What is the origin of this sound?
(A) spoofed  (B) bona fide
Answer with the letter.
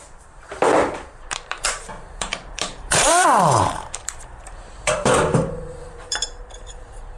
A